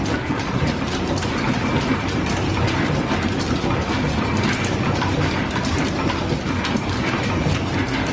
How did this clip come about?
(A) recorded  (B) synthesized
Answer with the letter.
A